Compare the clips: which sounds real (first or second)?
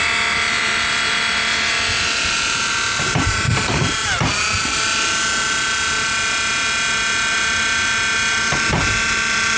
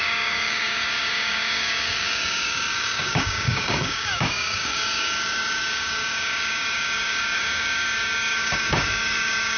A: first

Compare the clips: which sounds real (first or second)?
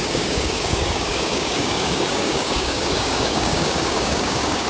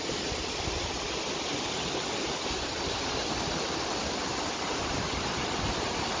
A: second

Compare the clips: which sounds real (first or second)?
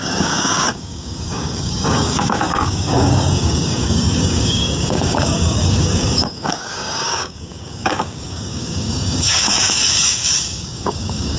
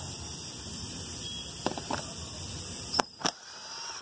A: second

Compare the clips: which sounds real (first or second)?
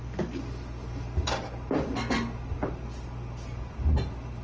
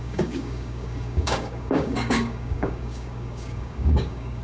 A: first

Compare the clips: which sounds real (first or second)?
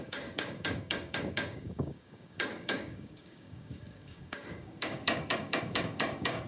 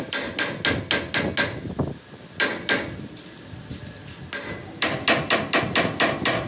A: second